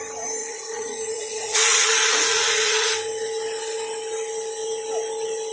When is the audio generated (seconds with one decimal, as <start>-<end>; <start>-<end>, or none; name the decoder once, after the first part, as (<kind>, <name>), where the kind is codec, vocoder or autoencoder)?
0.4-2.9 (vocoder, Vocos)